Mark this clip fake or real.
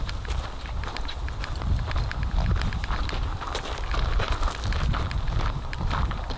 real